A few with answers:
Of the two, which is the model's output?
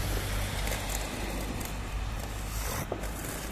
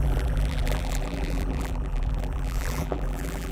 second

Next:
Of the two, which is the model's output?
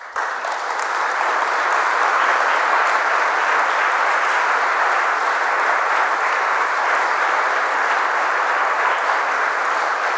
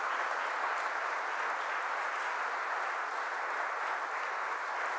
first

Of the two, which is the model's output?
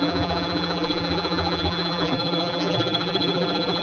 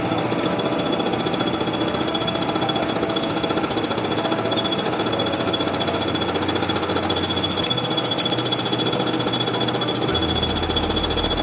first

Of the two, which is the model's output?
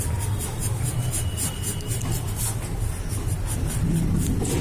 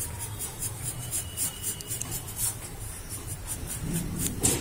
second